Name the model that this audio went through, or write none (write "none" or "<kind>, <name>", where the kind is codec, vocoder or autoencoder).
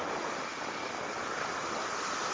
none